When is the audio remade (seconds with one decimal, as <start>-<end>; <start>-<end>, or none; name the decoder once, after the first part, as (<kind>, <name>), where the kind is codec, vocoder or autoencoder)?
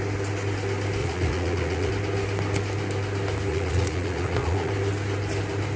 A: 1.0-1.9 (vocoder, Vocos); 3.5-4.7